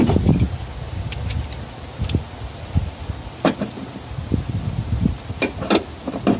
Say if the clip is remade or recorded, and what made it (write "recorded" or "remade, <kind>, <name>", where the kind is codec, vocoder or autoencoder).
recorded